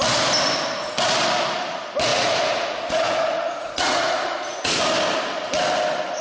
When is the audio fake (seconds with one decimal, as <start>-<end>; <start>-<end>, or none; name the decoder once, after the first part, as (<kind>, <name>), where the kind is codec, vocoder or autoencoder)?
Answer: 2.1-4.8 (vocoder, Vocos)